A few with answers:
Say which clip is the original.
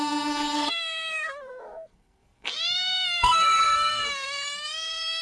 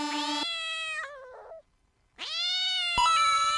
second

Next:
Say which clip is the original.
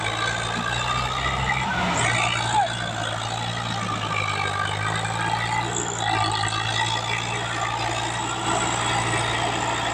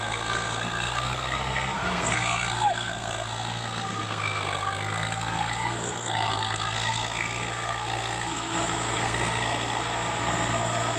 first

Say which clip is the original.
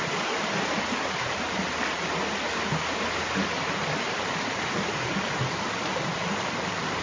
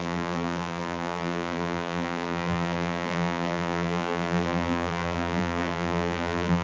first